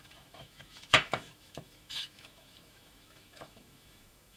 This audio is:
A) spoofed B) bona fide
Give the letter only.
A